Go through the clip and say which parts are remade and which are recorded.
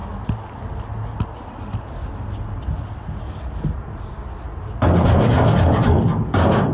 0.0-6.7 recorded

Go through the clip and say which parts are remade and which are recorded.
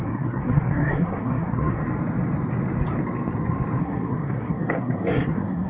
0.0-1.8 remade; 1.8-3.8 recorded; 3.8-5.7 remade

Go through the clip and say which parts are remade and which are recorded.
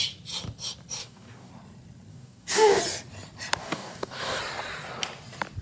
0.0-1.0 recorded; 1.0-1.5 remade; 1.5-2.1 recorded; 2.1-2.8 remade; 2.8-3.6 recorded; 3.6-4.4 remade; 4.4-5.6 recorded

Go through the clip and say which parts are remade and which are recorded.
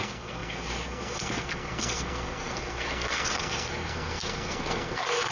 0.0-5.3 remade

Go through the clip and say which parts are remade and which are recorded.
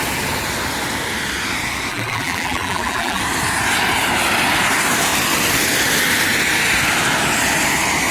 0.0-1.9 recorded; 1.9-3.2 remade; 3.2-8.1 recorded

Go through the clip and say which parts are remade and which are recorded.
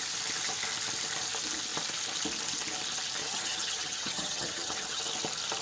0.0-3.2 recorded; 3.2-5.0 remade; 5.0-5.6 recorded